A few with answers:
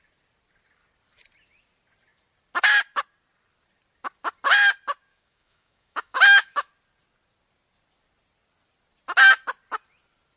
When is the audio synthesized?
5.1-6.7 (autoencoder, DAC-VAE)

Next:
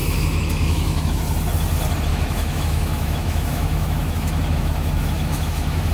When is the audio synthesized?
0.0-1.2 (autoencoder, DAC-VAE); 2.1-5.9

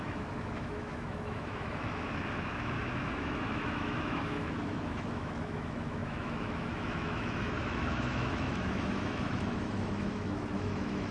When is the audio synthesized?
0.0-11.1 (autoencoder, DAC-VAE)

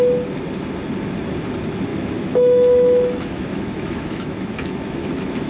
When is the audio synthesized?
1.9-5.5 (autoencoder, DAC-VAE)

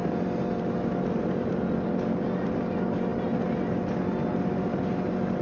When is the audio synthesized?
none

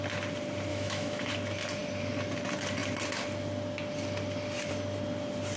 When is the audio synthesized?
0.7-1.3 (autoencoder, DAC-VAE)

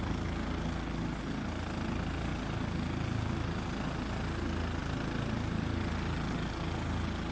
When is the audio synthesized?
none